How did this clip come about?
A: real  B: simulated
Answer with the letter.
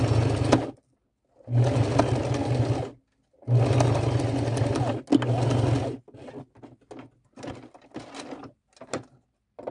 A